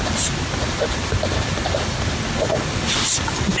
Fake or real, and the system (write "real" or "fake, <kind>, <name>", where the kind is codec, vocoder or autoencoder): real